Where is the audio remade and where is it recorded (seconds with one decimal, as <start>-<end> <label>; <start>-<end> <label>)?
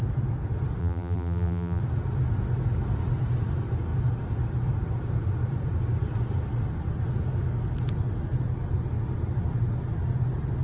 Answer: 0.0-0.8 recorded; 0.8-1.8 remade; 1.8-10.6 recorded